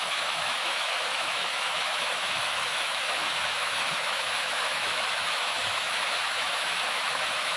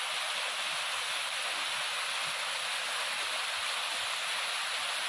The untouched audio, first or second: second